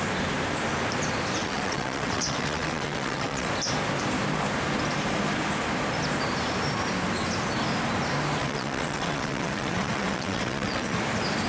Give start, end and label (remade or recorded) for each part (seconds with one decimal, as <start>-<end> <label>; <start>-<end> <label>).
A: 0.0-1.4 recorded; 1.4-3.5 remade; 3.5-8.4 recorded; 8.4-11.0 remade; 11.0-11.5 recorded